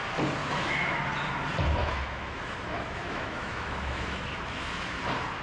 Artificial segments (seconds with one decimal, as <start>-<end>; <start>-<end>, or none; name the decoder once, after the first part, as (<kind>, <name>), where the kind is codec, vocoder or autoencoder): 0.4-1.0 (autoencoder, DAC-VAE); 1.8-5.0